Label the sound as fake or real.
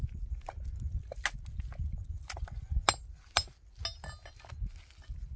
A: real